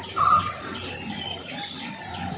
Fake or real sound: fake